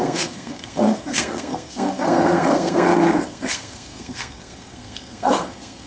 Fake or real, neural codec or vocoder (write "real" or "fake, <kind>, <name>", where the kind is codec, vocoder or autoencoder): fake, codec, SNAC